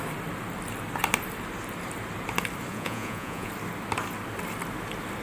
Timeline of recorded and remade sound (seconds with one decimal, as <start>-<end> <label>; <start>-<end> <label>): 0.0-2.7 recorded; 2.7-3.5 remade; 3.5-5.2 recorded